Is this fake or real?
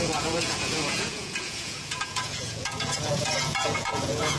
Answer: fake